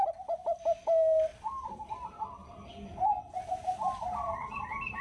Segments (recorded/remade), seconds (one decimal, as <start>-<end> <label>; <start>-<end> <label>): 0.0-5.0 recorded